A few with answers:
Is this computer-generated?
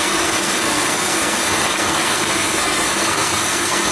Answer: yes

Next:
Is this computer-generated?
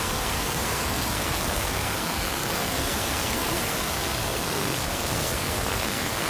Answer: yes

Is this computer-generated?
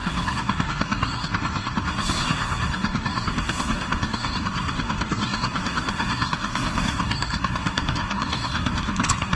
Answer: yes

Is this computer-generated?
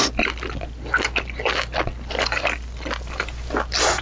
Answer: no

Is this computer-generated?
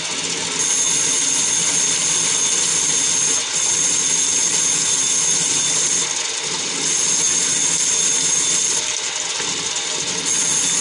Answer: no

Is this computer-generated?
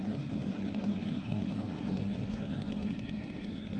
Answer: yes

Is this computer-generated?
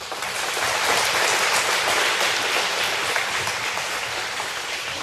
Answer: no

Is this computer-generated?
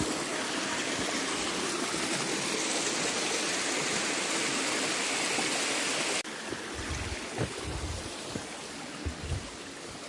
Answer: no